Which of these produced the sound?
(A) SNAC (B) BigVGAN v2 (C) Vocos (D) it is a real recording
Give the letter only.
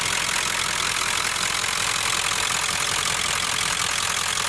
D